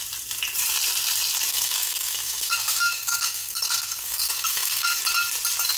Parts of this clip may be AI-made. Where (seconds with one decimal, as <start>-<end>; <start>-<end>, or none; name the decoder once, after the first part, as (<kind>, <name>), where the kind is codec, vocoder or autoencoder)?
1.5-5.0 (codec, SNAC)